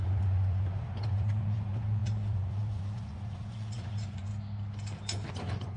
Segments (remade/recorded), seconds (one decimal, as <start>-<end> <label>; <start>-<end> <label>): 0.0-4.3 remade; 4.3-5.3 recorded; 5.3-5.8 remade